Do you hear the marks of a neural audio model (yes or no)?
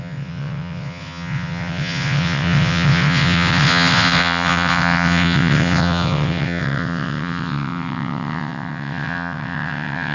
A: yes